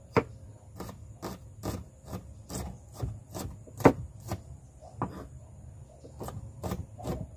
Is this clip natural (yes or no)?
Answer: yes